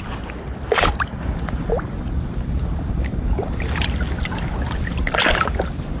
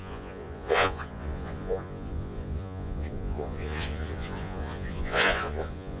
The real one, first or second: first